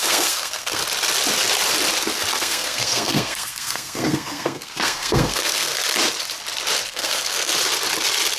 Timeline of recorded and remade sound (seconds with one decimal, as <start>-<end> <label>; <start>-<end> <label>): 0.0-0.8 remade; 0.8-2.4 recorded; 2.4-5.7 remade; 5.7-6.9 recorded; 6.9-7.5 remade; 7.5-8.4 recorded